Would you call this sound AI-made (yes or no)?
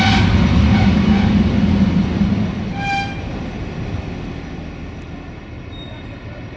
no